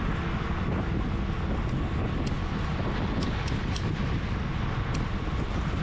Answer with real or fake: real